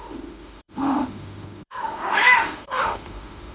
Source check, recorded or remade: remade